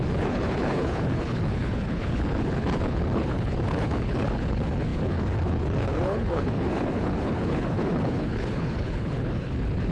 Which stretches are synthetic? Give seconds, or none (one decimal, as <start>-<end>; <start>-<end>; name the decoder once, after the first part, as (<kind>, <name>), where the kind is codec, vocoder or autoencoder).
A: 0.0-9.9 (codec, HILCodec)